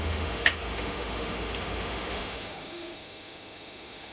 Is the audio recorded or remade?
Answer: remade